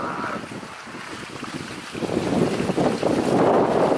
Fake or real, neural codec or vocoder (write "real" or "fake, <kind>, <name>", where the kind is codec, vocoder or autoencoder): real